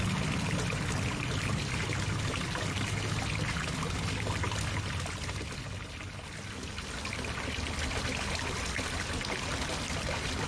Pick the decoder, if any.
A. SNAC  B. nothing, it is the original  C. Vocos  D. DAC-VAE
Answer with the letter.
B